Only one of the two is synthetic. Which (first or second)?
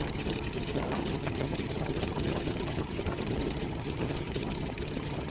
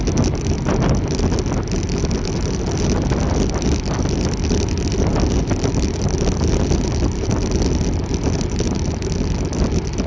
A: first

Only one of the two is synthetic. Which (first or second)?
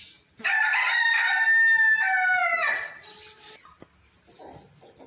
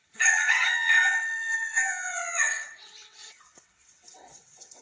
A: second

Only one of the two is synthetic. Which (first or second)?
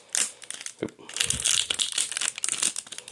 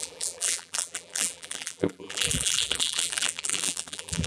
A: second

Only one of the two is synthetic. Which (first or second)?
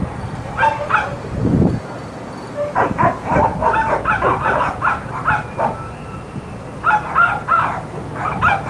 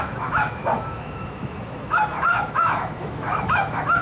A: second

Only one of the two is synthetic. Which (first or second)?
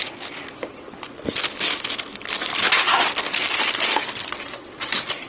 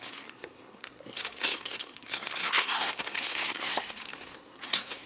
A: second